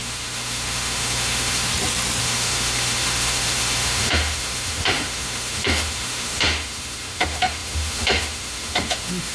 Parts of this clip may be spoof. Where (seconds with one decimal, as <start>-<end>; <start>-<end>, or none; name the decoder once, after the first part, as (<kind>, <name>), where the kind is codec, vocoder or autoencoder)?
0.0-1.7 (autoencoder, DAC-VAE); 2.2-9.3